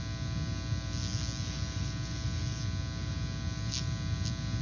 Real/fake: real